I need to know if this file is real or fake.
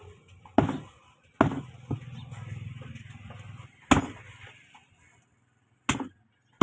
real